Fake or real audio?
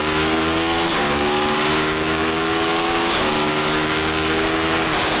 fake